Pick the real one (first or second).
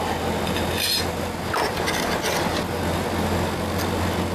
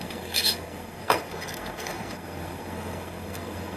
first